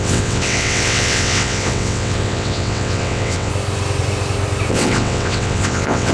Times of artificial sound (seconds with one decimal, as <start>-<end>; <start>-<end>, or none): 0.0-3.5; 4.7-6.1